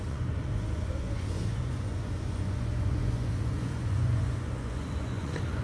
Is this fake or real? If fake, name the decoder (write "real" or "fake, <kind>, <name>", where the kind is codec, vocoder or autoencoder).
fake, vocoder, Vocos